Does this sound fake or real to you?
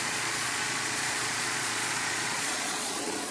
fake